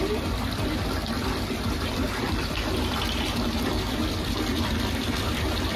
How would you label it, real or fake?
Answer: fake